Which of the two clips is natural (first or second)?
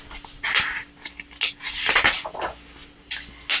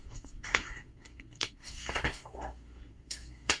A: first